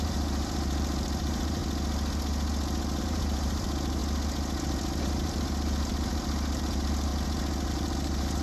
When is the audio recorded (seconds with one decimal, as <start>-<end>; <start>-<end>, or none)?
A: 1.6-3.0; 4.0-5.0; 7.1-7.7